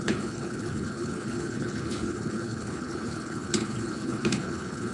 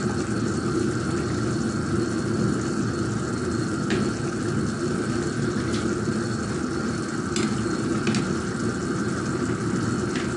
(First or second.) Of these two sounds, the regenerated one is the first